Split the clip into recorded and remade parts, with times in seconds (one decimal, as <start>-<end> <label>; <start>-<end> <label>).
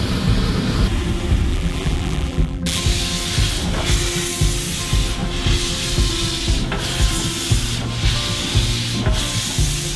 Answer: 0.0-1.5 recorded; 1.5-2.8 remade; 2.8-10.0 recorded